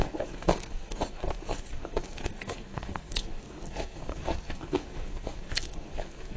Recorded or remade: remade